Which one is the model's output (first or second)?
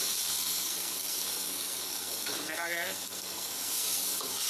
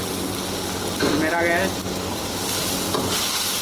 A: first